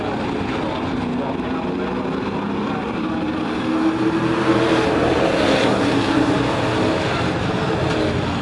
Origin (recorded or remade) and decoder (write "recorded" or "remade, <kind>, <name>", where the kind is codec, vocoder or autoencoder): recorded